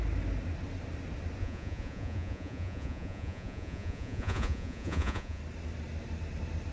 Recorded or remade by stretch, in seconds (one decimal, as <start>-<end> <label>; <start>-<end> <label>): 0.0-1.4 recorded; 1.4-5.4 remade; 5.4-6.7 recorded

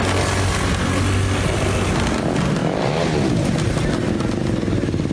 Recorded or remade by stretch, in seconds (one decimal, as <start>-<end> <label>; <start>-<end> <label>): 0.0-5.1 recorded

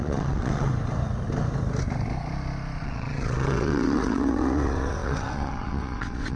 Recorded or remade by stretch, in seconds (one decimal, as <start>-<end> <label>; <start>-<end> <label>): 0.0-0.7 remade; 0.7-2.8 recorded; 2.8-6.4 remade

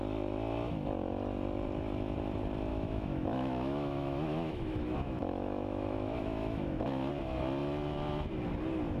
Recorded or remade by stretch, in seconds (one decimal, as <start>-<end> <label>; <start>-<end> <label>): 0.0-2.7 recorded; 2.7-7.1 remade; 7.1-9.0 recorded

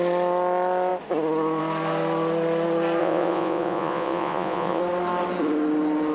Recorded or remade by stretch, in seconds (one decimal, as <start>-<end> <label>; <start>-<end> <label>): 0.0-3.0 recorded; 3.0-4.8 remade; 4.8-6.1 recorded